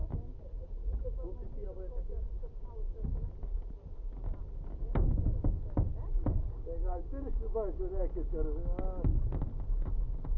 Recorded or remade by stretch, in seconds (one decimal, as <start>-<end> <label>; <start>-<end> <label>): 0.0-10.4 recorded